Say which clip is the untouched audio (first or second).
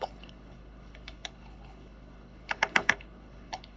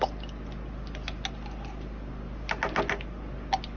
second